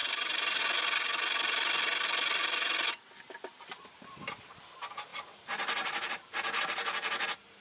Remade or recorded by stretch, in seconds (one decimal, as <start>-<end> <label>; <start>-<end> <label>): 0.0-0.6 remade; 0.6-3.5 recorded; 3.5-4.6 remade; 4.6-5.1 recorded; 5.1-6.6 remade; 6.6-7.6 recorded